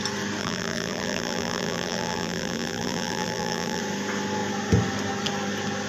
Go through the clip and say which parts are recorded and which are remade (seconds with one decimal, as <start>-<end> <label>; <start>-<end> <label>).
0.0-0.4 recorded; 0.4-3.8 remade; 3.8-5.9 recorded